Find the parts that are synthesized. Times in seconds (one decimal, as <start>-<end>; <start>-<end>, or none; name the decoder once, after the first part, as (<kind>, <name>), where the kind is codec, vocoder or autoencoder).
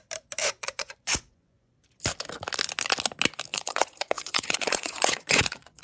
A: 0.4-1.7 (vocoder, Vocos); 3.5-5.8